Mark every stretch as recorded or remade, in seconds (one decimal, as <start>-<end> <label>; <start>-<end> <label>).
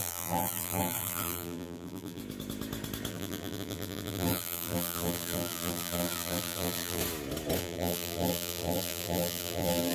0.0-2.2 remade; 2.2-3.1 recorded; 3.1-7.0 remade; 7.0-7.6 recorded; 7.6-9.9 remade